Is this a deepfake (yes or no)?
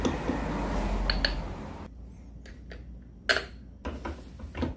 no